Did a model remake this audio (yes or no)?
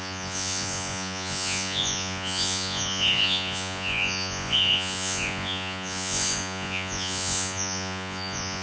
yes